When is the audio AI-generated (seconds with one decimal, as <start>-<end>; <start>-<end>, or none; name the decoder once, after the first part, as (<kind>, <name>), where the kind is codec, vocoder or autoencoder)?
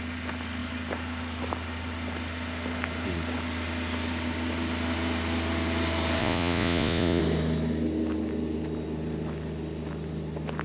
6.2-7.2 (vocoder, Vocos)